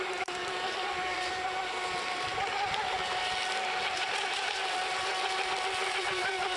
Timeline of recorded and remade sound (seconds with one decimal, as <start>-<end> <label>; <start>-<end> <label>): 0.0-2.3 remade; 2.3-2.9 recorded; 2.9-5.1 remade; 5.1-6.0 recorded; 6.0-6.6 remade